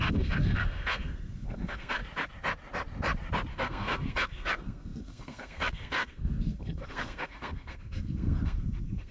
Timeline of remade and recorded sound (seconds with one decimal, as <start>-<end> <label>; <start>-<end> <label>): 0.0-2.0 remade; 2.0-3.5 recorded; 3.5-9.1 remade